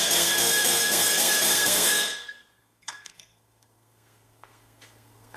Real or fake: fake